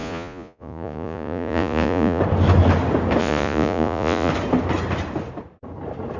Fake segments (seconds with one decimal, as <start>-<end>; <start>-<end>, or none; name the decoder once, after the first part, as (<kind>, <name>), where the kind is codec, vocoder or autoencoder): 0.0-2.2 (vocoder, Vocos); 3.2-4.3